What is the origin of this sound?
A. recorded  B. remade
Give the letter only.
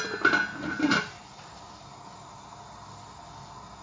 A